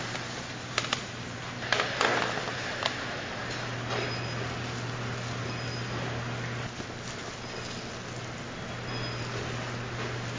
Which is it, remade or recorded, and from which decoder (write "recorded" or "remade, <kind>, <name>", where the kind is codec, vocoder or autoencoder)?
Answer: recorded